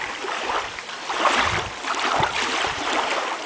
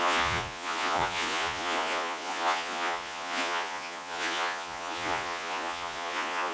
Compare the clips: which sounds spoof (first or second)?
second